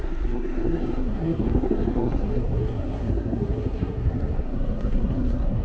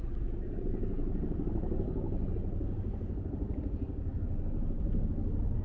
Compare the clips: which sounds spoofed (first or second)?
first